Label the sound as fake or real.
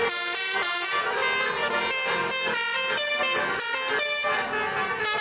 real